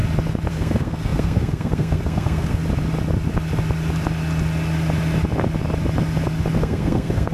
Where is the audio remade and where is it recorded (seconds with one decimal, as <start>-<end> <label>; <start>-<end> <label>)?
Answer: 0.0-0.5 recorded; 0.5-2.6 remade; 2.6-6.6 recorded; 6.6-7.3 remade